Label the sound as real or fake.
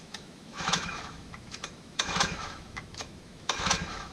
fake